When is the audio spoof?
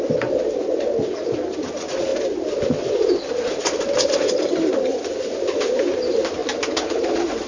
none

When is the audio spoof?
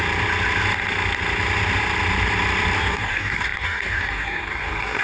2.8-5.0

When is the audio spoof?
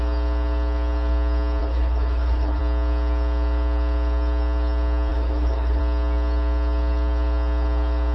1.6-2.6; 5.1-5.8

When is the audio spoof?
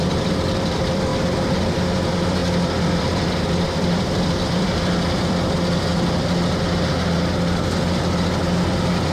0.0-1.1; 1.6-5.9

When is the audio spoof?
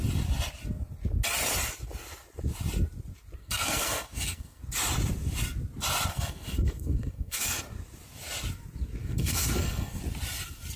3.4-4.6; 6.1-7.6; 9.0-10.0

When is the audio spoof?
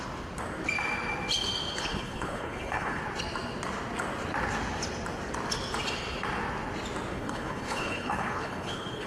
1.7-3.0; 7.1-9.1